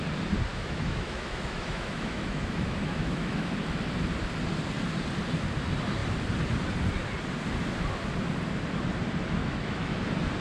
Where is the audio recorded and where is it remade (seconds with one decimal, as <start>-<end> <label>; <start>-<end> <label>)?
0.0-0.5 recorded; 0.5-3.6 remade; 3.6-9.4 recorded; 9.4-10.0 remade; 10.0-10.4 recorded